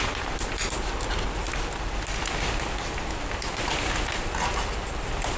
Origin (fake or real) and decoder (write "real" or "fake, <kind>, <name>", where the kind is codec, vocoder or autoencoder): real